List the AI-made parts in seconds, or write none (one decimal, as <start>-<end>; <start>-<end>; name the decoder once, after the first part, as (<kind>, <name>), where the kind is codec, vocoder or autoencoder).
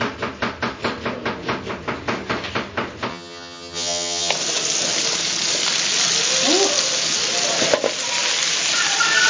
3.1-4.3 (vocoder, HiFi-GAN)